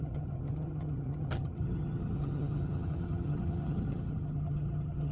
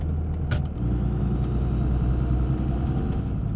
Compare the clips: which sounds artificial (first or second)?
first